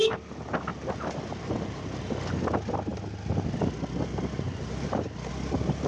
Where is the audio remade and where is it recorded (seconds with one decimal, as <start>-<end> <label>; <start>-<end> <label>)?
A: 0.0-0.7 recorded; 0.7-1.4 remade; 1.4-5.9 recorded